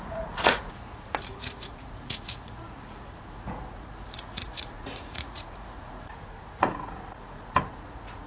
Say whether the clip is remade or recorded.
remade